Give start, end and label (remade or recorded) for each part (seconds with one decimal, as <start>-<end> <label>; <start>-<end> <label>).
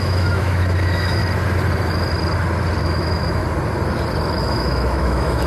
0.0-1.2 remade; 1.2-2.8 recorded; 2.8-3.4 remade; 3.4-4.4 recorded; 4.4-5.5 remade